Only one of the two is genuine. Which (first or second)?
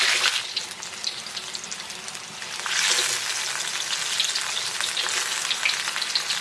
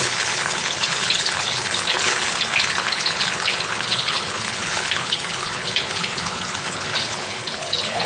first